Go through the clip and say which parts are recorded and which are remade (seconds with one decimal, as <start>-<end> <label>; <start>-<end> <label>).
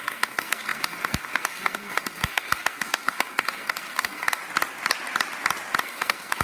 0.0-4.4 remade; 4.4-5.8 recorded; 5.8-6.4 remade